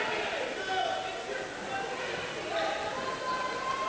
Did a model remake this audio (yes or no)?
no